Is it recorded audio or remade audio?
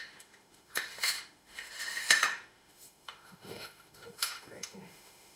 remade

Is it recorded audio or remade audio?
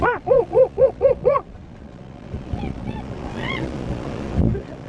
remade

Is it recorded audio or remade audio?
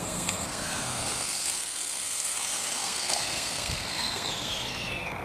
remade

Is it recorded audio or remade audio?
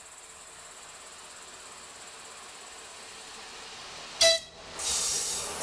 recorded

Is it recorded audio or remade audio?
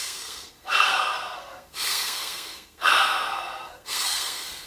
remade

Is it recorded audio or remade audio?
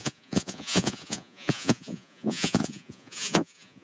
remade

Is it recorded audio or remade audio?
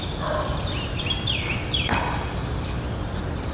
recorded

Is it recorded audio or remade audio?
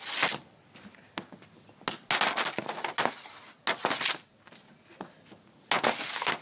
recorded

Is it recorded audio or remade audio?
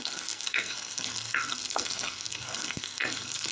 remade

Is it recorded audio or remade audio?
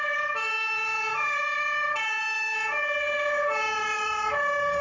remade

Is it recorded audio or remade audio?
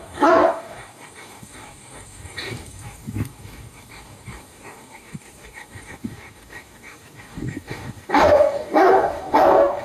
remade